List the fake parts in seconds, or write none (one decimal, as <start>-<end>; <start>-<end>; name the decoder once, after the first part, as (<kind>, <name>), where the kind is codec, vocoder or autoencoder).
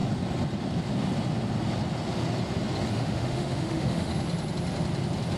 2.9-4.1 (autoencoder, DAC-VAE)